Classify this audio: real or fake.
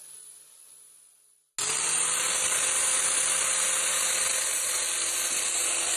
real